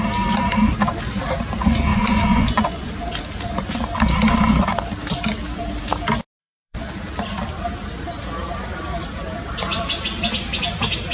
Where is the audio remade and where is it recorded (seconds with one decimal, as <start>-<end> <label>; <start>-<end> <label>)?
0.0-1.9 recorded; 1.9-2.9 remade; 2.9-6.4 recorded; 6.4-6.9 remade; 6.9-11.1 recorded